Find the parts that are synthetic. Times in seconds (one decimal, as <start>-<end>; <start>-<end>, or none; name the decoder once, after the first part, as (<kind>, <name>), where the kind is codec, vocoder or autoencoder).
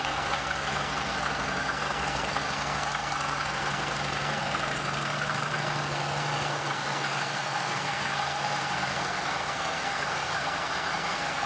0.0-11.5 (codec, SNAC)